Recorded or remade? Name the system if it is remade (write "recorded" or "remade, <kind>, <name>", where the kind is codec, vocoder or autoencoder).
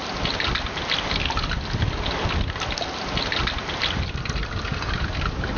recorded